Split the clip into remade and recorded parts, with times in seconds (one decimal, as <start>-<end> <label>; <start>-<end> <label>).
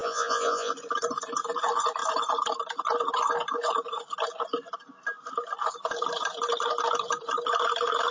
0.0-0.7 remade; 0.7-8.1 recorded